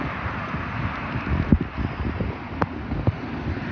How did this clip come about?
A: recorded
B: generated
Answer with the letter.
A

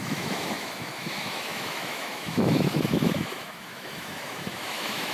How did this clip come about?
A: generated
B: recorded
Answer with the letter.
A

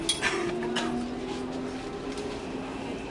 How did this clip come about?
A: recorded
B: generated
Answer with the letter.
A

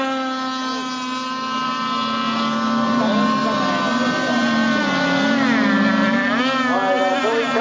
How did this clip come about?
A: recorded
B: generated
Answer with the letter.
A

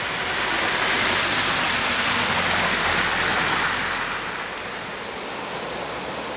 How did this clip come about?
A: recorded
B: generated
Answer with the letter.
A